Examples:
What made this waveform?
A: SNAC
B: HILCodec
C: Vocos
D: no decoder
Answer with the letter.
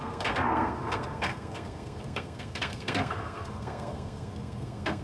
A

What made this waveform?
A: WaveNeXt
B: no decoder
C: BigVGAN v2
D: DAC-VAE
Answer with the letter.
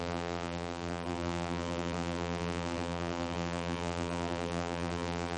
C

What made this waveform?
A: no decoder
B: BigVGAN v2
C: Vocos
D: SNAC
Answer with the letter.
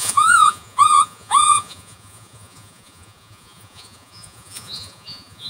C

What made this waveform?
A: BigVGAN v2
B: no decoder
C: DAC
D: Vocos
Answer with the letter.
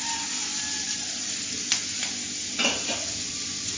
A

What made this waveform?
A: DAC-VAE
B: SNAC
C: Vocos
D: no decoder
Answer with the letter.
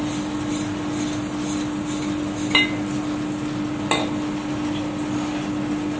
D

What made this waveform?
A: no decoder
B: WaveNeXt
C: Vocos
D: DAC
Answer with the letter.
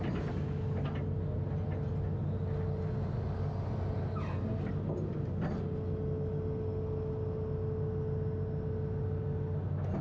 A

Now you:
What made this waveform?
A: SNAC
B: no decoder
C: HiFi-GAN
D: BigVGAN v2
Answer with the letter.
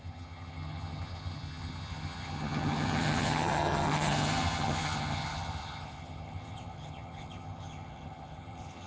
C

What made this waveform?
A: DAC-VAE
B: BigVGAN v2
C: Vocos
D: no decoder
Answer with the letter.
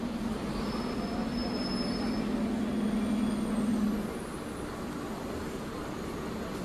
D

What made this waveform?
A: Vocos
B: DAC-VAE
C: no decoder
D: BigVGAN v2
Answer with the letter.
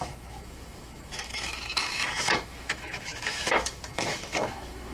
B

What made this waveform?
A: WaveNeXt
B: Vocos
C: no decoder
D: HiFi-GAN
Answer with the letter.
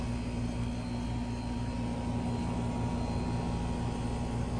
C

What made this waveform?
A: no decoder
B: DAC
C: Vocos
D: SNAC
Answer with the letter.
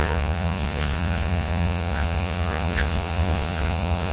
C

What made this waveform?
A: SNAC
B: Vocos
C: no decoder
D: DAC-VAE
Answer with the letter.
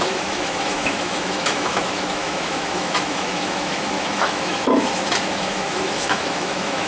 D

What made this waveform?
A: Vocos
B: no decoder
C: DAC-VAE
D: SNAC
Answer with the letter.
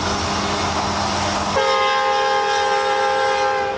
B